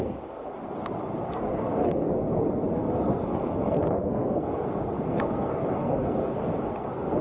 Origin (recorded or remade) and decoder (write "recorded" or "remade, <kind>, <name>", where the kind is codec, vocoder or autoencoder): remade, codec, SNAC